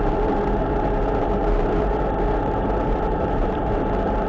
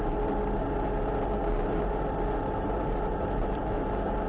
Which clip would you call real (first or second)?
second